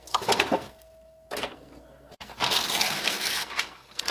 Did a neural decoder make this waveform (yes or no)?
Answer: yes